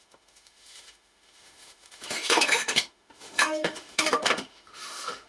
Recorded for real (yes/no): no